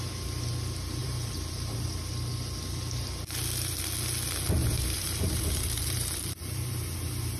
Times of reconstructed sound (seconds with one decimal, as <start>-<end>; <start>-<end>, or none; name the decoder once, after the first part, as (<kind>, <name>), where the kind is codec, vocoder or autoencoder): 1.0-2.1 (vocoder, BigVGAN v2); 4.6-7.4

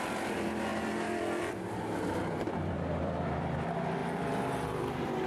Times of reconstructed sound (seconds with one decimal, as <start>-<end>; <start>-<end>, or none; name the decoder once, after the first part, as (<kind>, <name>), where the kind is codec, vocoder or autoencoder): 0.0-5.3 (vocoder, BigVGAN v2)